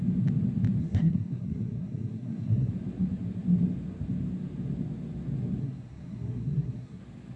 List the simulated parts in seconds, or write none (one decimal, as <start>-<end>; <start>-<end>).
0.8-2.7; 5.6-7.0